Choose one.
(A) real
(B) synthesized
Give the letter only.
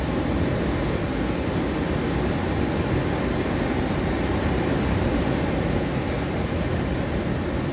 A